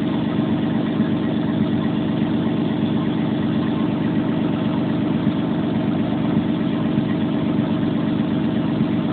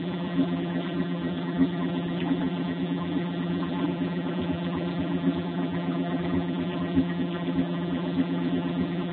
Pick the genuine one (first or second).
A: first